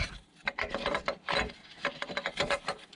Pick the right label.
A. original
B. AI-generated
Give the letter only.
B